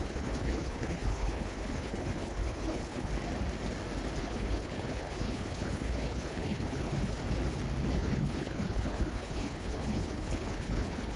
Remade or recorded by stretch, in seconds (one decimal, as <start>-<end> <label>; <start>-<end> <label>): 0.0-3.1 remade; 3.1-4.2 recorded; 4.2-7.2 remade; 7.2-7.9 recorded; 7.9-11.2 remade